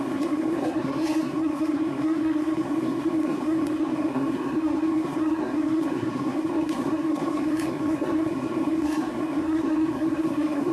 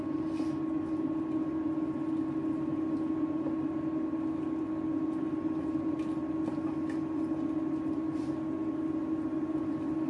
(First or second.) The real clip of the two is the second